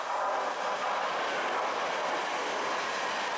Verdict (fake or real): real